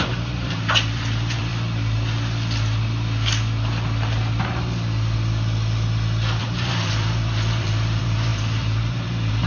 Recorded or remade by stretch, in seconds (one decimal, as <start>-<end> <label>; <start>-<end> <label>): 0.0-1.5 remade; 1.5-6.4 recorded; 6.4-9.5 remade